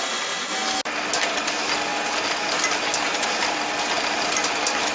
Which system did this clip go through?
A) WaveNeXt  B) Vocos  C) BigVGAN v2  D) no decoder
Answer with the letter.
D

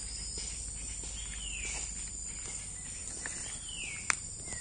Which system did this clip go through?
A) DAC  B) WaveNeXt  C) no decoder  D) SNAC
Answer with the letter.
C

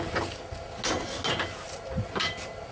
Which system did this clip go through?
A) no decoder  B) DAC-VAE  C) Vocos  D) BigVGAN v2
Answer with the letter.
A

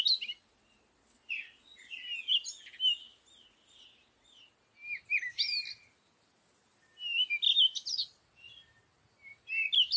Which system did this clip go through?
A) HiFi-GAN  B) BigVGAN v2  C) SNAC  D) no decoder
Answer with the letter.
D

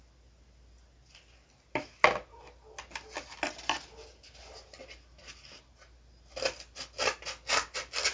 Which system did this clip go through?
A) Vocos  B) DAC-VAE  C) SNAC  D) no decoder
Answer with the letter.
D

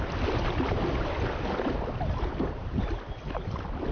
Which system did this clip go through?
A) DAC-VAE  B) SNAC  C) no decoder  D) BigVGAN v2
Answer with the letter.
C